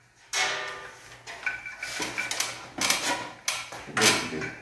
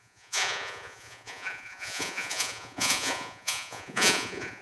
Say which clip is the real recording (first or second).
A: first